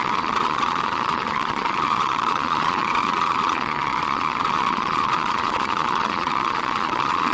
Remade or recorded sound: remade